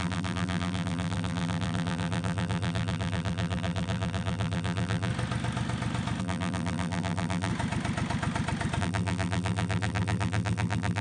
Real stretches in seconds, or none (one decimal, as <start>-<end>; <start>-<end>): 5.1-6.2; 7.5-8.8